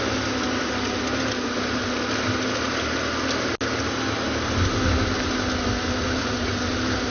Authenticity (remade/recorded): recorded